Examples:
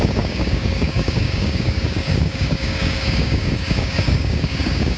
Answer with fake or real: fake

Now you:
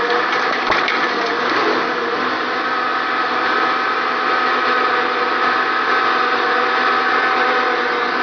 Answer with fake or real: real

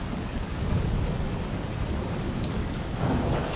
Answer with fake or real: fake